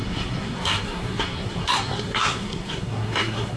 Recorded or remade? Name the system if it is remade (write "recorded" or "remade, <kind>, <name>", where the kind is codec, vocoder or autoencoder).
remade, codec, SNAC